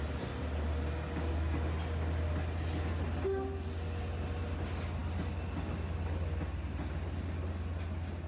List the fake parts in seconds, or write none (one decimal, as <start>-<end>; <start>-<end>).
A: none